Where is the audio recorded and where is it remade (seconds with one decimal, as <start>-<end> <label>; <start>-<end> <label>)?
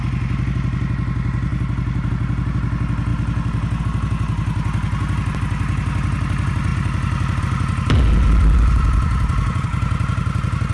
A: 0.0-10.7 recorded